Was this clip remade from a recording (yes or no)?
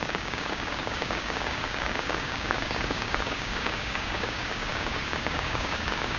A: yes